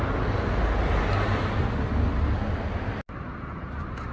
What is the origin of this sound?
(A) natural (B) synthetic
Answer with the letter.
A